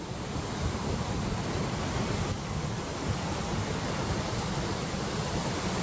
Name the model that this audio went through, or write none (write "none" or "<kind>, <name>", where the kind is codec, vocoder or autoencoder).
none